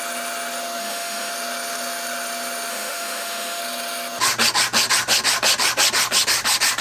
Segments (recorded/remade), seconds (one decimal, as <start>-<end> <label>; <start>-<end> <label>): 0.0-0.8 recorded; 0.8-1.3 remade; 1.3-2.7 recorded; 2.7-3.6 remade; 3.6-6.8 recorded